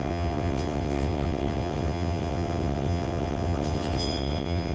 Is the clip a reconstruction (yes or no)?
yes